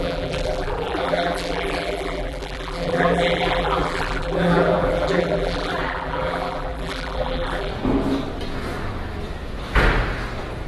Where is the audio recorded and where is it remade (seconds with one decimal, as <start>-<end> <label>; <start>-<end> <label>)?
0.0-7.7 remade; 7.7-10.7 recorded